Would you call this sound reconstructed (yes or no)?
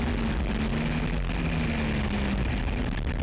no